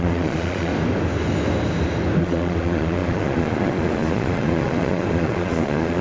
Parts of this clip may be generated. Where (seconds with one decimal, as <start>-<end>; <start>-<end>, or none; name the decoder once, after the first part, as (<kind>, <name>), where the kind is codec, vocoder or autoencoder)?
0.0-0.7 (vocoder, Vocos); 2.2-6.0